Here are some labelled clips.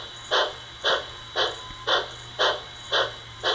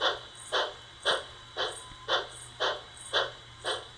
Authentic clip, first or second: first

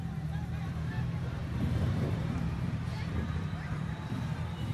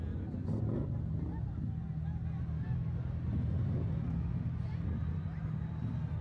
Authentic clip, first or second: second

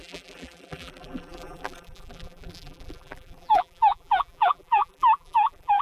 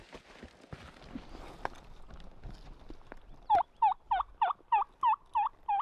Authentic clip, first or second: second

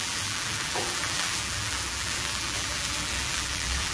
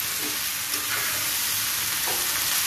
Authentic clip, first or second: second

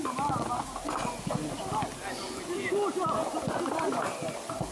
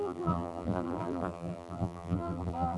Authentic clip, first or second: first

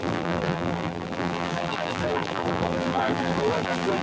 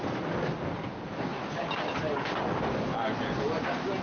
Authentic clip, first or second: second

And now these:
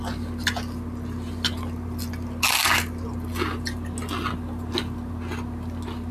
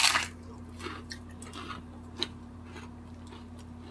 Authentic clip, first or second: first